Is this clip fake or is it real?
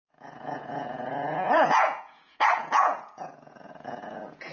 fake